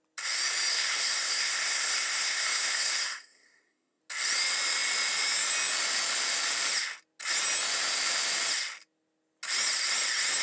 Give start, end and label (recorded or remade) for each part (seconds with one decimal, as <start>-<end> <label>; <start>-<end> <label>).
0.0-0.7 recorded; 0.7-4.0 remade; 4.0-10.4 recorded